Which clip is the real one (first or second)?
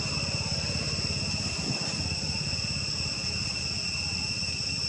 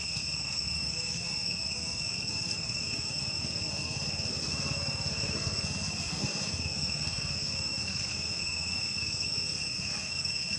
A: first